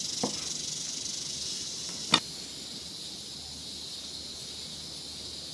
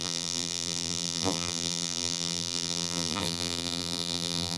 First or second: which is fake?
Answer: second